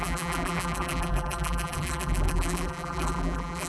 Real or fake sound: fake